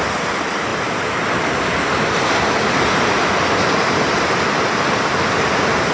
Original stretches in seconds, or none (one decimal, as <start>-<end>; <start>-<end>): 0.0-5.9